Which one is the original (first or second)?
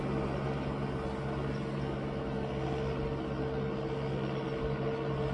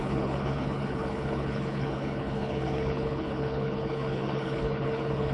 first